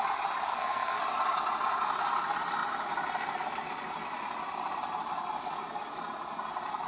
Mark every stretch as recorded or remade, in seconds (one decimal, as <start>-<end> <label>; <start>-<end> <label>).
0.0-0.5 recorded; 0.5-1.0 remade; 1.0-6.9 recorded